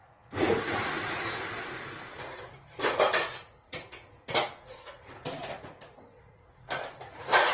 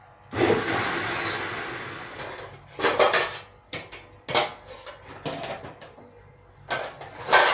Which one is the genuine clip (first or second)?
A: second